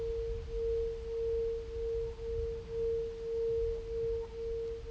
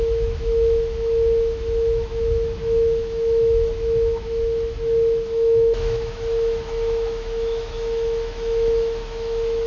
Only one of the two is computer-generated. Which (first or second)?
second